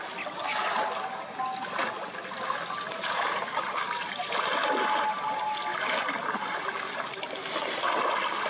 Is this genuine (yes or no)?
yes